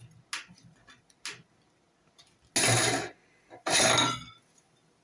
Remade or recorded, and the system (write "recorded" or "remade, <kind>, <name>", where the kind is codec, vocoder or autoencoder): recorded